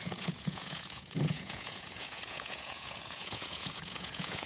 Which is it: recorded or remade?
remade